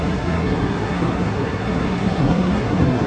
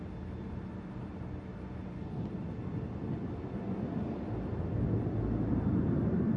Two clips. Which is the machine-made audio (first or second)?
first